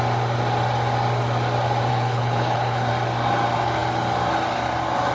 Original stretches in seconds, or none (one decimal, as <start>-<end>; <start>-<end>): 0.0-1.9; 2.9-5.1